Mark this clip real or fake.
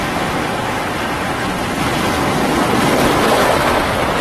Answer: real